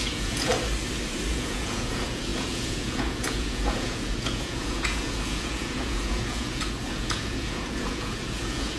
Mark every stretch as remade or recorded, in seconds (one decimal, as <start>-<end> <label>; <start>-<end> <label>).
0.0-0.5 remade; 0.5-1.3 recorded; 1.3-8.8 remade